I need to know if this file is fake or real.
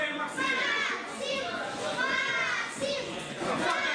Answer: fake